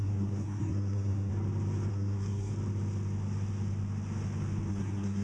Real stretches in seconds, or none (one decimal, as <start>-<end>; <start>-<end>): 1.3-1.9; 2.5-4.7